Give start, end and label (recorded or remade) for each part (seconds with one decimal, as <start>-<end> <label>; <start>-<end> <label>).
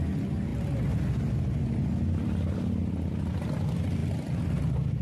0.0-5.0 recorded